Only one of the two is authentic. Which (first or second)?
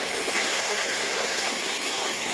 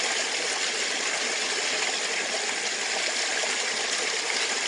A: second